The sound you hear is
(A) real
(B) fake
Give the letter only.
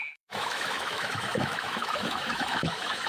B